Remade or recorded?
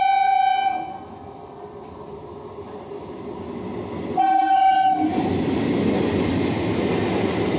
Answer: recorded